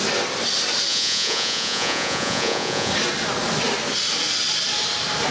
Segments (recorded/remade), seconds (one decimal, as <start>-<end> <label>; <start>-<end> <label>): 0.0-0.9 recorded; 0.9-2.9 remade; 2.9-5.3 recorded